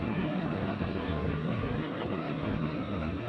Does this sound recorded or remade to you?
remade